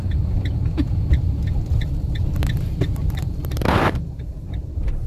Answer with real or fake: fake